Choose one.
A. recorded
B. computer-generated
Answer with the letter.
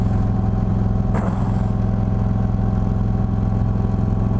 A